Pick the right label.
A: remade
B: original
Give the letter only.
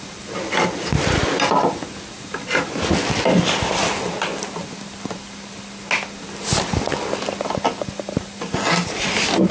B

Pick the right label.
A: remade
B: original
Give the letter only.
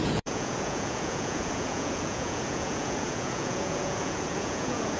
A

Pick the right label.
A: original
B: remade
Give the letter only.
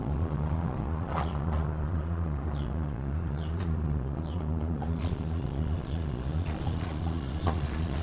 B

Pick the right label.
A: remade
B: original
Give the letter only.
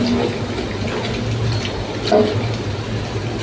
B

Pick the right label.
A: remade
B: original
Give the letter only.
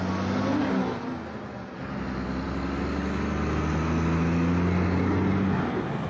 B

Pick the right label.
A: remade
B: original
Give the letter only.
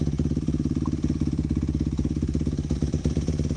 A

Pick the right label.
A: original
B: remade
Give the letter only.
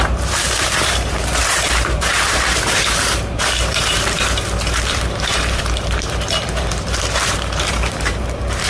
B